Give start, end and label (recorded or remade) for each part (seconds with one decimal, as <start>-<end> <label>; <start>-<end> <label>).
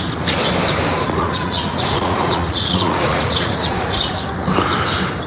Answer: 0.0-0.9 recorded; 0.9-4.1 remade; 4.1-5.3 recorded